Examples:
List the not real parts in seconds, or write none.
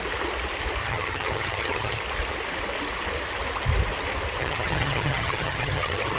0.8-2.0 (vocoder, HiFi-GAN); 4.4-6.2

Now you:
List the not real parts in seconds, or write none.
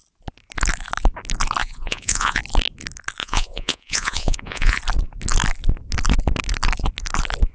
1.6-2.4 (vocoder, Vocos); 3.2-4.8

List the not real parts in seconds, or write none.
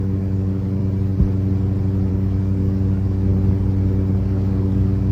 0.0-0.8 (codec, DAC); 2.1-3.3; 4.1-5.1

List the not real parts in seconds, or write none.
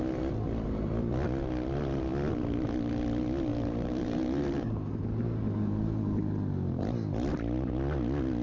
3.5-6.0 (vocoder, BigVGAN v2)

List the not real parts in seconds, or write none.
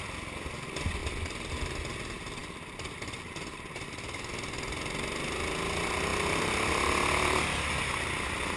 1.0-1.5 (vocoder, BigVGAN v2); 2.4-4.3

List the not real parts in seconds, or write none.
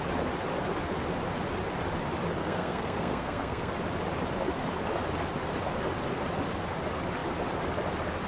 2.4-3.7 (codec, SNAC)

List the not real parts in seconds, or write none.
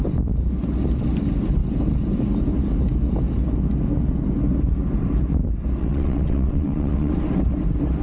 5.8-7.1 (vocoder, WaveNeXt)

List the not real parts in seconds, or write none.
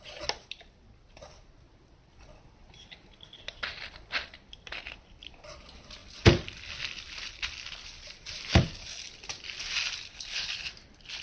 10.1-10.7 (codec, HILCodec)